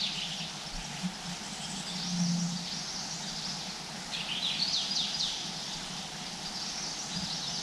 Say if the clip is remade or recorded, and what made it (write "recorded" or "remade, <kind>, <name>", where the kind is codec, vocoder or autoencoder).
recorded